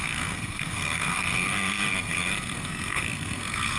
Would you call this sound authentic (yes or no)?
no